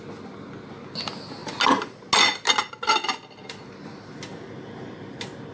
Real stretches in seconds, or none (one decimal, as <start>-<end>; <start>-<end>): 0.0-5.5